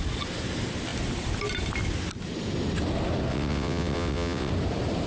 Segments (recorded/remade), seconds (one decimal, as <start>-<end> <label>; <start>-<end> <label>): 0.0-3.3 recorded; 3.3-4.5 remade; 4.5-5.1 recorded